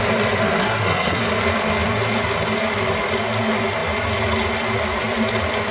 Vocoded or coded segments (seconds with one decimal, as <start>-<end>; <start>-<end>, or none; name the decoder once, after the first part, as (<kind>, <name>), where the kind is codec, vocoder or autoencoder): 0.6-1.2 (codec, SNAC)